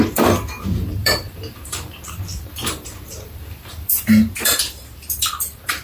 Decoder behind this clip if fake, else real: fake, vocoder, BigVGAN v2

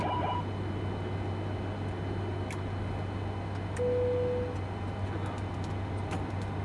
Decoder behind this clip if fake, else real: real